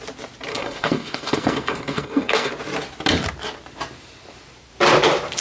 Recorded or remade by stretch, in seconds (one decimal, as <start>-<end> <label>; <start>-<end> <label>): 0.0-0.5 recorded; 0.5-2.5 remade; 2.5-5.4 recorded